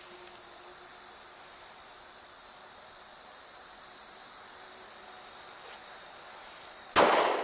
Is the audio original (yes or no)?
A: yes